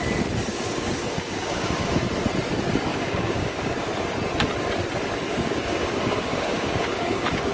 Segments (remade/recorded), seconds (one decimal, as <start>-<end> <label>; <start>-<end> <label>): 0.0-0.5 recorded; 0.5-2.0 remade; 2.0-2.9 recorded; 2.9-3.9 remade; 3.9-5.3 recorded; 5.3-7.5 remade